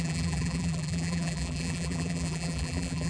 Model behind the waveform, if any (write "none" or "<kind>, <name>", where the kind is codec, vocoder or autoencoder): vocoder, BigVGAN v2